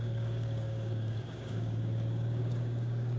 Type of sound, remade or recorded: remade